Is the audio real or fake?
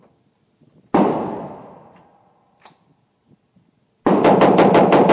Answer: real